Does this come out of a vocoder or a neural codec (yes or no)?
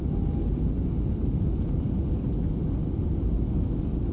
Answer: no